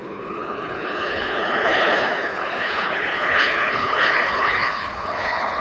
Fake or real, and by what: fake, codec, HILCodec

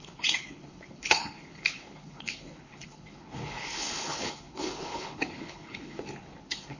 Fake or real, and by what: fake, codec, HILCodec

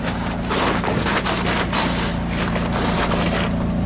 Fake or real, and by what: real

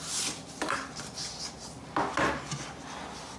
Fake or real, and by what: real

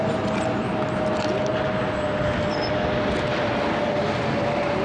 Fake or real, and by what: real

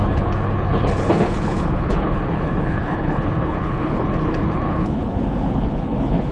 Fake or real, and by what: fake, codec, HILCodec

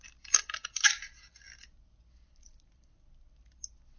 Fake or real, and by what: real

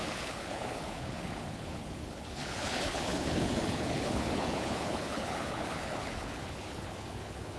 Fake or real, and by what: fake, codec, HILCodec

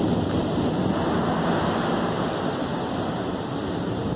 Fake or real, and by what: real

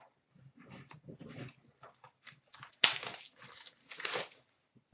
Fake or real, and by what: real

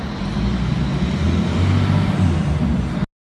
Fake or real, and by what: real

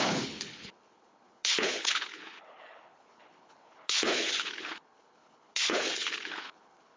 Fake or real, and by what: fake, codec, HILCodec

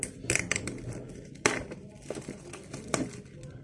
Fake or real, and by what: real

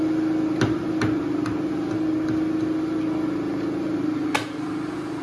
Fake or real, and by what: real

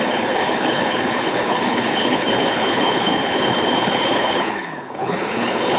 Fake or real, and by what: fake, codec, HILCodec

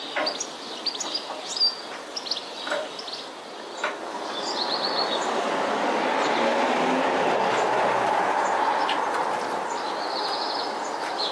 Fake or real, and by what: real